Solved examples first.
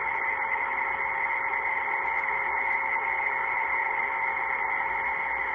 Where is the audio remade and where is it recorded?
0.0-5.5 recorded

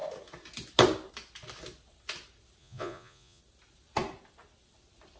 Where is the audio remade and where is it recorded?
0.0-2.6 recorded; 2.6-3.4 remade; 3.4-5.2 recorded

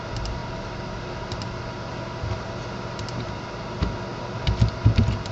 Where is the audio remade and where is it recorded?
0.0-5.3 recorded